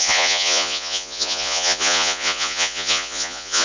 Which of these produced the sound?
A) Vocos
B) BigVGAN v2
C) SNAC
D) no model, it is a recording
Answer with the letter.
A